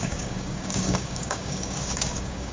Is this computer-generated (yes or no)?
yes